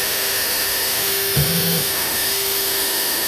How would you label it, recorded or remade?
remade